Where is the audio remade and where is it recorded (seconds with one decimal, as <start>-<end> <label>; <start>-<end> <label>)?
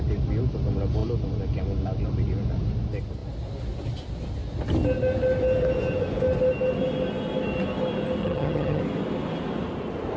0.0-8.2 recorded; 8.2-8.8 remade; 8.8-10.2 recorded